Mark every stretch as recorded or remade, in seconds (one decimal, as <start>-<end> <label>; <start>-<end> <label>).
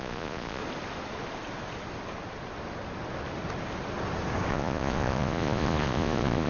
0.0-0.6 remade; 0.6-4.5 recorded; 4.5-6.5 remade